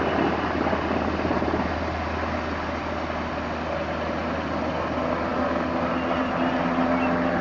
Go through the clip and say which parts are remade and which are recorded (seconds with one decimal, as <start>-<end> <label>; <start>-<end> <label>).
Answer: 0.0-7.4 recorded

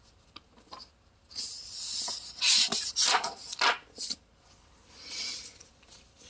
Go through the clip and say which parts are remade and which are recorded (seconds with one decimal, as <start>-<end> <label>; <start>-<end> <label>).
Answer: 0.0-6.3 recorded